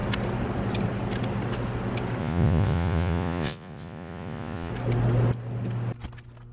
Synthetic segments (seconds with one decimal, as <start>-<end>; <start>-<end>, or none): 2.2-4.7